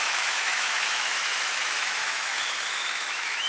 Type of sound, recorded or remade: remade